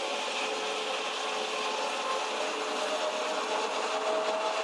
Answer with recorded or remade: recorded